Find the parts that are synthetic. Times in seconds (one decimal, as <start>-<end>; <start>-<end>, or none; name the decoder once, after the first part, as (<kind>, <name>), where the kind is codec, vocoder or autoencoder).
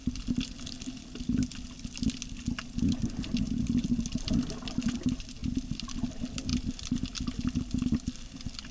3.8-6.5 (vocoder, BigVGAN v2)